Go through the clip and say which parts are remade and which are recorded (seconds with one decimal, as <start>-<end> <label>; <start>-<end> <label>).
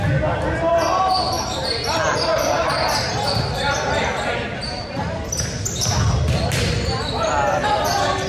0.0-2.3 recorded; 2.3-3.1 remade; 3.1-8.3 recorded